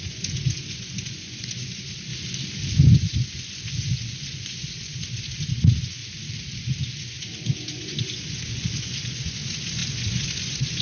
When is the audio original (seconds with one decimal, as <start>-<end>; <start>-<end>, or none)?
2.1-2.8; 6.0-6.6

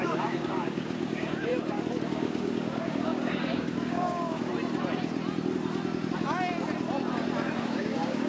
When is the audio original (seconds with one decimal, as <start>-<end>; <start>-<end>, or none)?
1.5-2.0; 4.5-7.6

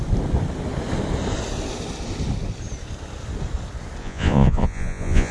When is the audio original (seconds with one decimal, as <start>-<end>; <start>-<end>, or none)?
0.0-4.0

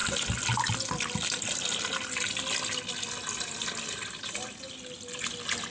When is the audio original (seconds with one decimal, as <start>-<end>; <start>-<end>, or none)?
0.0-5.7

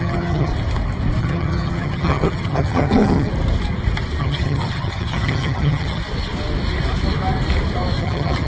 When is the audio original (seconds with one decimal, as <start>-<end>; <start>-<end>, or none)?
0.5-1.2; 3.3-4.2; 6.0-8.0

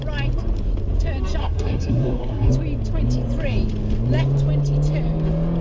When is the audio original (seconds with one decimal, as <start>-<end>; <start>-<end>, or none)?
0.0-1.4; 2.5-5.6